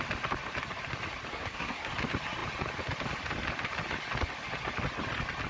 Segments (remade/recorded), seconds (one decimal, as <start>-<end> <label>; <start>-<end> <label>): 0.0-1.3 recorded; 1.3-1.9 remade; 1.9-5.5 recorded